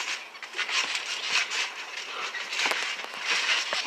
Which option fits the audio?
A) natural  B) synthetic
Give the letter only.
A